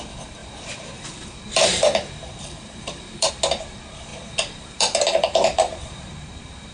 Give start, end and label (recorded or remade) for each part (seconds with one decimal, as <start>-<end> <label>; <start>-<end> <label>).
0.0-0.4 recorded; 0.4-3.3 remade; 3.3-4.1 recorded; 4.1-6.7 remade